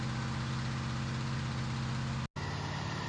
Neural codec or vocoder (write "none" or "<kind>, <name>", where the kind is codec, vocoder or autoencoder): none